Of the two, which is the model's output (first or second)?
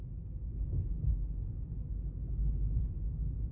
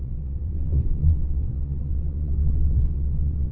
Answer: second